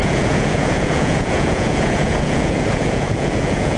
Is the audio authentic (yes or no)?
no